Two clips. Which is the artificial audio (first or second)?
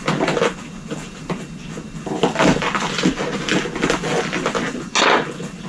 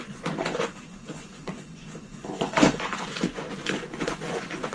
second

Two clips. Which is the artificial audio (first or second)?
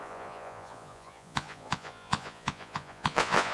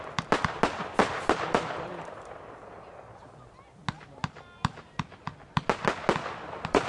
first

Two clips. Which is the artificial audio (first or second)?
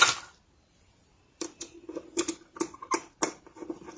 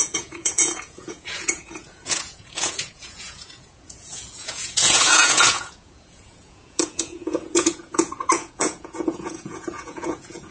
second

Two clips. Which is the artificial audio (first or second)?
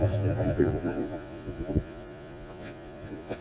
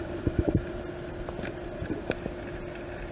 first